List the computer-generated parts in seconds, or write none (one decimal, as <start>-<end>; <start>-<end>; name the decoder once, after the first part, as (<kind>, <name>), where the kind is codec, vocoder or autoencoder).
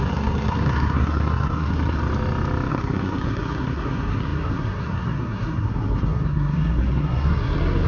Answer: 0.0-2.0 (codec, SNAC); 2.7-7.9